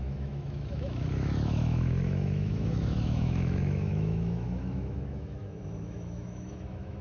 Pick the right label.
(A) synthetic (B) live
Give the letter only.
A